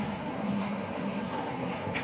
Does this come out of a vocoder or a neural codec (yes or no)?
yes